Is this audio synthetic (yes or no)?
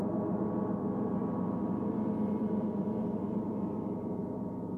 yes